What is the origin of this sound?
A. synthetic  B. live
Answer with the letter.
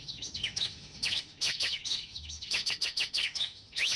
A